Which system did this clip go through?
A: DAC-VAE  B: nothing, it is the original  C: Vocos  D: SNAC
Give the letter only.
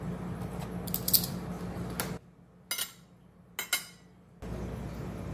B